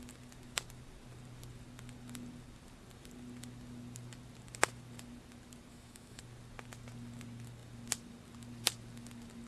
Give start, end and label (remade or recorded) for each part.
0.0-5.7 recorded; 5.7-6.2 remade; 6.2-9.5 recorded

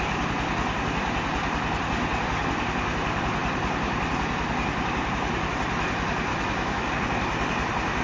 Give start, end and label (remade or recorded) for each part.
0.0-6.3 recorded; 6.3-6.9 remade; 6.9-8.0 recorded

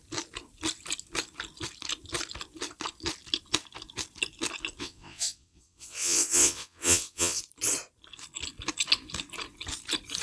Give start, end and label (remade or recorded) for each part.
0.0-4.8 recorded; 4.8-7.4 remade; 7.4-10.2 recorded

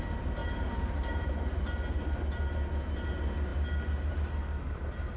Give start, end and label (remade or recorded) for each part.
0.0-0.4 recorded; 0.4-1.3 remade; 1.3-5.2 recorded

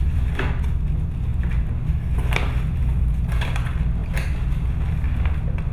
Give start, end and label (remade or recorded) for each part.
0.0-5.7 recorded